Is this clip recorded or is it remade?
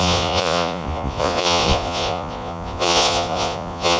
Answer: remade